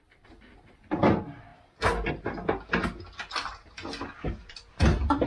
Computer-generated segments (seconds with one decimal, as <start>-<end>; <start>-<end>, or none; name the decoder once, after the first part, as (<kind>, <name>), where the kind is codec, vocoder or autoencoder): none